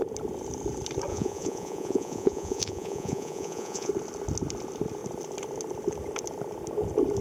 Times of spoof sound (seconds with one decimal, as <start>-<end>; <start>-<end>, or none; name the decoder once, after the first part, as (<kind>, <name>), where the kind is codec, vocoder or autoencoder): 1.1-3.9 (vocoder, Vocos)